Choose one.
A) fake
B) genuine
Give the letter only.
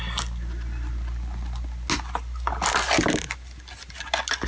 B